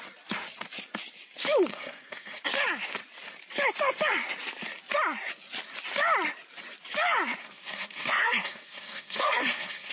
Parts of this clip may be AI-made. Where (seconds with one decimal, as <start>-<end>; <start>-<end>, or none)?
1.7-2.4; 7.4-9.9